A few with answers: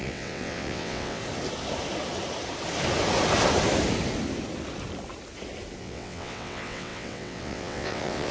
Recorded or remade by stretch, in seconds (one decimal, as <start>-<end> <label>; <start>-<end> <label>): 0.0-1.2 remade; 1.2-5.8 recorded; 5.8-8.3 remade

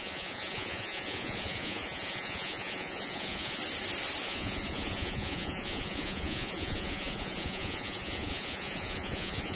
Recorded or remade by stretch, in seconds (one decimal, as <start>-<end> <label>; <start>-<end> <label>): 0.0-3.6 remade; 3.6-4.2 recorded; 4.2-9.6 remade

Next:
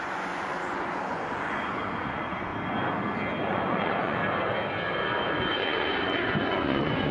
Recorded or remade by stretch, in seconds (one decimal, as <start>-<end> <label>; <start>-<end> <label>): 0.0-2.5 remade; 2.5-3.4 recorded; 3.4-4.2 remade; 4.2-5.5 recorded; 5.5-7.1 remade

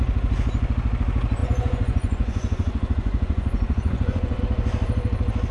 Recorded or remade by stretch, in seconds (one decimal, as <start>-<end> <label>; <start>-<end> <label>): 0.0-1.4 recorded; 1.4-4.4 remade; 4.4-5.5 recorded

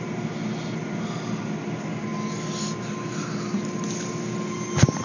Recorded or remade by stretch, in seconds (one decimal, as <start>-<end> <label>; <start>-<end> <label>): 0.0-5.0 recorded

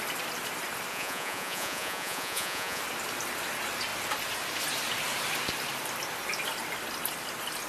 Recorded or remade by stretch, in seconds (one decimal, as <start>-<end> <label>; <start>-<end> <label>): 0.0-0.9 recorded; 0.9-2.8 remade; 2.8-7.7 recorded

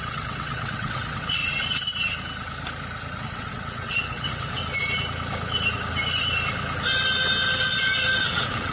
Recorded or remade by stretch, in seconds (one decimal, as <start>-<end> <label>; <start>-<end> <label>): 0.0-1.4 remade; 1.4-3.2 recorded; 3.2-4.6 remade; 4.6-8.2 recorded; 8.2-8.7 remade